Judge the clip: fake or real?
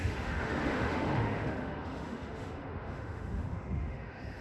fake